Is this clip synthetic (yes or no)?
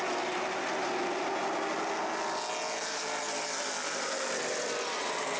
no